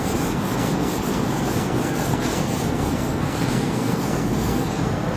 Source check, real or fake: fake